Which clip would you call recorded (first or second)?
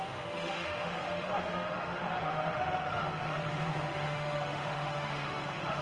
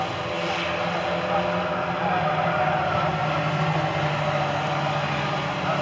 second